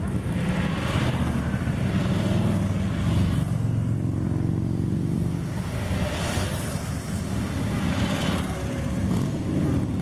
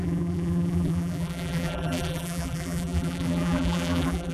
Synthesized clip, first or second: second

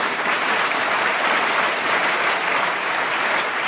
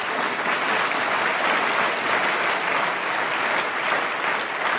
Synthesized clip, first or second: first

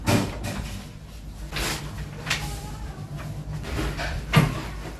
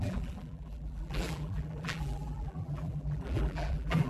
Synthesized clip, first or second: second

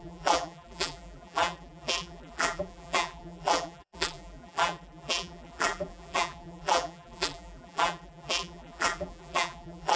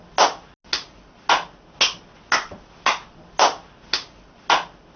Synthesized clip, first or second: first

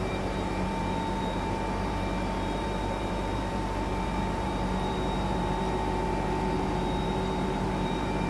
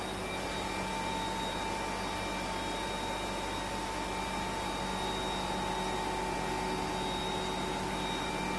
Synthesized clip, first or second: first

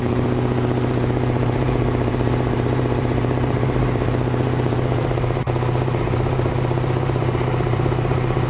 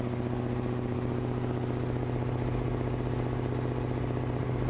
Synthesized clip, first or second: first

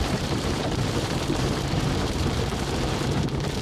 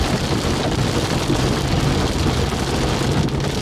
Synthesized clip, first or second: first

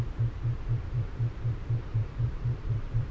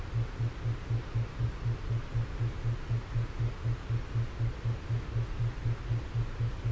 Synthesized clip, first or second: first